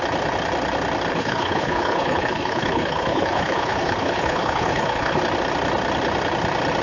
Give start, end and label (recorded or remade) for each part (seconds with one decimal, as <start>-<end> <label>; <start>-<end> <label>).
0.0-1.1 recorded; 1.1-5.2 remade; 5.2-6.8 recorded